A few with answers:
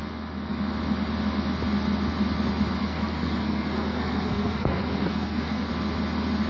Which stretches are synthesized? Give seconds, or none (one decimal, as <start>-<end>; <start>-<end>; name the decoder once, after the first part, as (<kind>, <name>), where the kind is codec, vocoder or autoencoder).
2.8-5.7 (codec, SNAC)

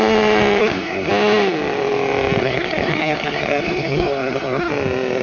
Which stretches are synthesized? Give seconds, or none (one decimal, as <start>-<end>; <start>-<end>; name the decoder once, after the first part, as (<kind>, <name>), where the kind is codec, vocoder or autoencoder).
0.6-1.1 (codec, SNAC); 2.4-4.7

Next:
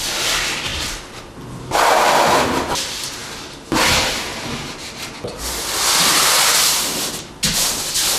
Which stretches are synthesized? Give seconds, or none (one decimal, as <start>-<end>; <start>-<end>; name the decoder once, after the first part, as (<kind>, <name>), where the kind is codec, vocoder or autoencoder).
none